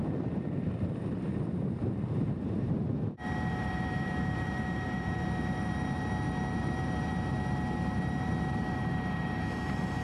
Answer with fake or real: fake